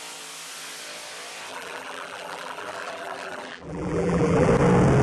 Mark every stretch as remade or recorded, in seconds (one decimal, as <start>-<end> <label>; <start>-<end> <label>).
0.0-1.5 recorded; 1.5-4.5 remade; 4.5-5.0 recorded